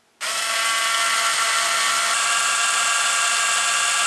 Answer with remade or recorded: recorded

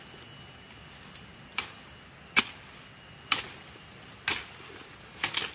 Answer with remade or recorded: recorded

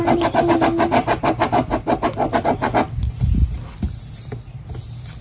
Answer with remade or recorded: recorded